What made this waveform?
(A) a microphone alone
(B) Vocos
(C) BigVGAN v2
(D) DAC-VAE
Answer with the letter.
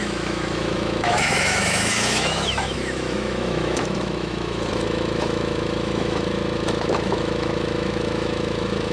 D